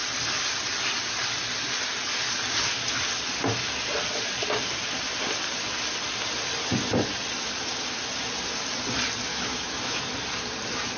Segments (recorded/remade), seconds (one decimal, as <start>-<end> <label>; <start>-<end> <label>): 0.0-9.3 recorded; 9.3-10.0 remade; 10.0-11.0 recorded